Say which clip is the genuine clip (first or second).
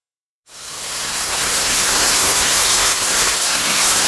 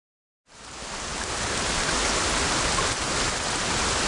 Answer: second